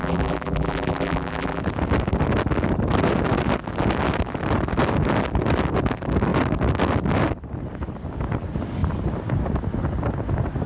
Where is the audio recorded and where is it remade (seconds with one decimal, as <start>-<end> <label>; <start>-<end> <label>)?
0.0-1.6 remade; 1.6-10.7 recorded